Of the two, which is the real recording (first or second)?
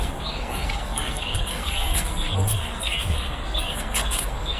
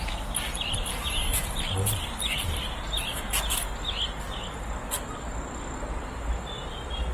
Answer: second